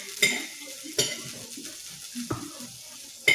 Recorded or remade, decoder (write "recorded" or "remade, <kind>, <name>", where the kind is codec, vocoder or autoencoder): recorded